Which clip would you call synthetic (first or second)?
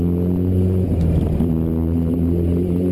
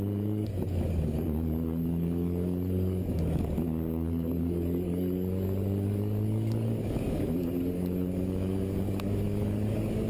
second